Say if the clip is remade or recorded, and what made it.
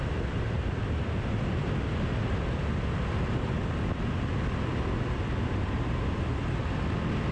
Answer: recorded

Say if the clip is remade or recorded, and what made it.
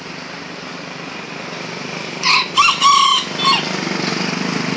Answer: recorded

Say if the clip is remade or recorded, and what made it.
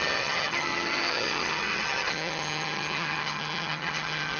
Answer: remade, vocoder, HiFi-GAN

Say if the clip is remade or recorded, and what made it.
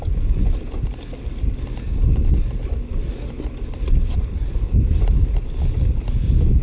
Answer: recorded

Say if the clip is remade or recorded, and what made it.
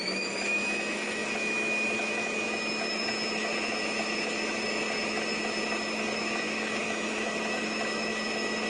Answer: remade, autoencoder, DAC-VAE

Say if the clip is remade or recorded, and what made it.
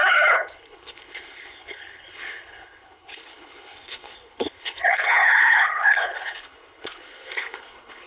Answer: remade, codec, HILCodec